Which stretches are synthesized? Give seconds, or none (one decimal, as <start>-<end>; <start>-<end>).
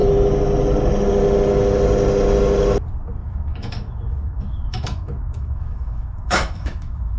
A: 3.2-7.2